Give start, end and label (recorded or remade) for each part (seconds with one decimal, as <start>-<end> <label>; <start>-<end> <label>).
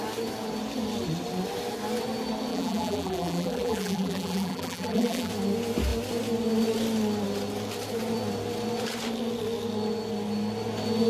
0.0-2.5 recorded; 2.5-5.3 remade; 5.3-11.1 recorded